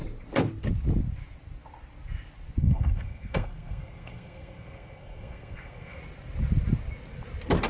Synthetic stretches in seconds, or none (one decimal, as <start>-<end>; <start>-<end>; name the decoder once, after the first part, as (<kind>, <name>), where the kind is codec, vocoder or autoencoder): 2.6-6.0 (codec, SNAC)